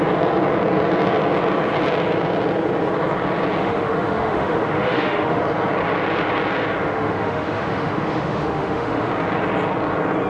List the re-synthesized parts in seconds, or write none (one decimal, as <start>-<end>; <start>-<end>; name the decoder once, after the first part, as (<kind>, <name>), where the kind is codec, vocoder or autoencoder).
3.6-5.4 (autoencoder, DAC-VAE); 6.8-9.1